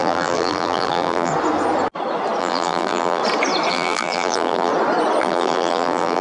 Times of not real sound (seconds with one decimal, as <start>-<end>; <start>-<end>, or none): 0.0-1.3; 2.4-3.2; 3.7-4.7; 5.2-6.2